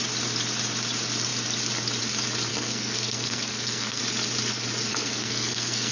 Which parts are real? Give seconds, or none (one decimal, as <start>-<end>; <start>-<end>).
0.0-2.5; 4.0-4.9